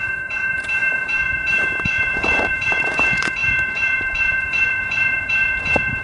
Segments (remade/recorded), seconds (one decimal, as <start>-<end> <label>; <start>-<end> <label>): 0.0-6.0 remade